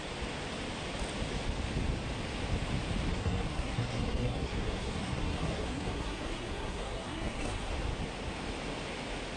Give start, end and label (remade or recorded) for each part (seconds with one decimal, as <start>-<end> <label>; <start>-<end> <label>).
0.0-3.1 recorded; 3.1-7.7 remade; 7.7-9.4 recorded